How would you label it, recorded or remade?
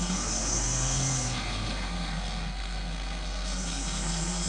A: remade